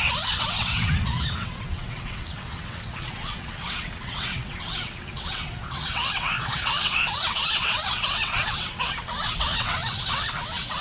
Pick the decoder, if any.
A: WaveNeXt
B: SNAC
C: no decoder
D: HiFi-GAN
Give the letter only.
A